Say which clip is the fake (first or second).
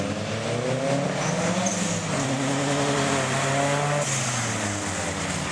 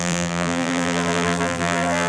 second